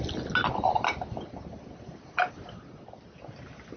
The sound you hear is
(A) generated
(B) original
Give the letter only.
B